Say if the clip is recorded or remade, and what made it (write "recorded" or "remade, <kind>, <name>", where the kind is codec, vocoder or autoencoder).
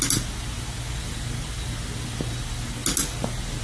recorded